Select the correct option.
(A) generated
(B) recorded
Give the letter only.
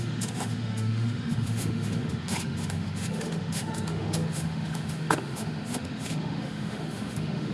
A